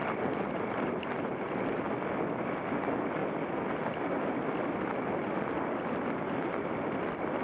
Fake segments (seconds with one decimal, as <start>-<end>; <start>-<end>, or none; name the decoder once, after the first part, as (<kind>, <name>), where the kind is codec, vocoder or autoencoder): none